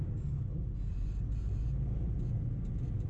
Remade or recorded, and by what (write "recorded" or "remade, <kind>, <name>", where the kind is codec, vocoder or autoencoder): recorded